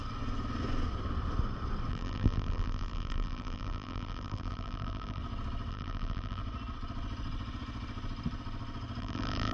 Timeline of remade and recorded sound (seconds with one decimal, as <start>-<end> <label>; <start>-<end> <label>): 0.0-1.9 recorded; 1.9-5.2 remade; 5.2-5.7 recorded; 5.7-6.4 remade; 6.4-9.0 recorded; 9.0-9.5 remade